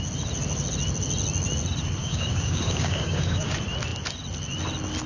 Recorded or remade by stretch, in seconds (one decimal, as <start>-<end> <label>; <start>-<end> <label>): 0.0-2.0 recorded; 2.0-3.5 remade; 3.5-5.1 recorded